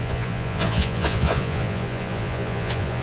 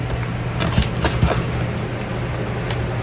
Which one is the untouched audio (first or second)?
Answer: second